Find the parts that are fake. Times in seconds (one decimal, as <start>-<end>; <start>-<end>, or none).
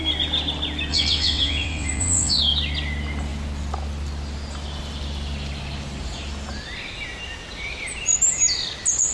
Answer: 0.9-2.4